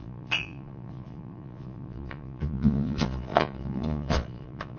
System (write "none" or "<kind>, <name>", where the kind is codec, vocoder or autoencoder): vocoder, Vocos